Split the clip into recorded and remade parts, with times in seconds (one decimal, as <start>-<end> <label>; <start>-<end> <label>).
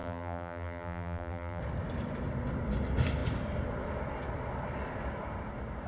0.0-1.6 remade; 1.6-5.9 recorded